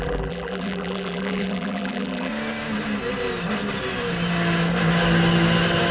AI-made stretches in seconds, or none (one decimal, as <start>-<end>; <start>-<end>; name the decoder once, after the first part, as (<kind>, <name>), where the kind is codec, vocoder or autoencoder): 0.0-2.3 (vocoder, BigVGAN v2)